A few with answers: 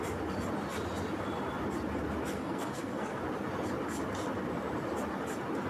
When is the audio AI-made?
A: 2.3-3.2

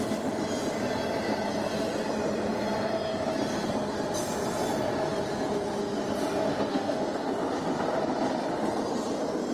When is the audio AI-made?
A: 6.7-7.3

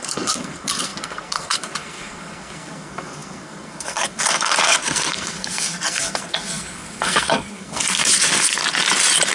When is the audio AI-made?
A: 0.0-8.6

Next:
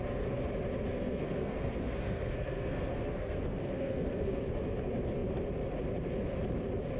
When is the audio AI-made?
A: 0.9-4.4